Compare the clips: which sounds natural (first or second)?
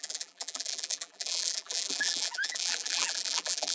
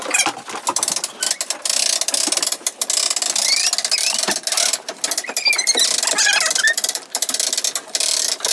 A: second